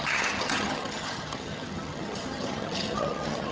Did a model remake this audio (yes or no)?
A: yes